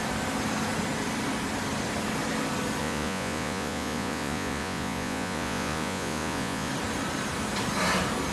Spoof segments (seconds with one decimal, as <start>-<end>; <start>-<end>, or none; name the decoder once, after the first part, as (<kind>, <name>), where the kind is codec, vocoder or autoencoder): 2.8-6.7 (vocoder, Vocos)